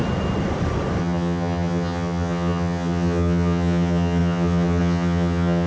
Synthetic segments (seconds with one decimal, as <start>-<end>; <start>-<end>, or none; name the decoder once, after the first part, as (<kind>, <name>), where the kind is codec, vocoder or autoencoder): 1.0-5.7 (vocoder, HiFi-GAN)